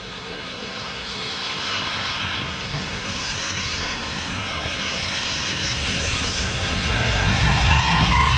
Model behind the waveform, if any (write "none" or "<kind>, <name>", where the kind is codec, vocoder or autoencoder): codec, SNAC